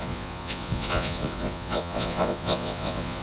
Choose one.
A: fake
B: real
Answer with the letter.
A